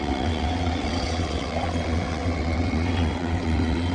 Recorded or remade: remade